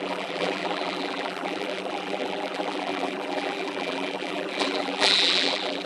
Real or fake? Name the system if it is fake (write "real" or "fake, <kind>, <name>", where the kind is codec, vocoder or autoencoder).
fake, vocoder, BigVGAN v2